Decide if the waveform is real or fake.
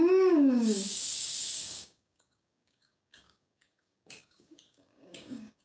fake